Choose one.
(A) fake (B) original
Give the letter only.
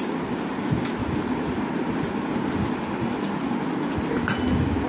B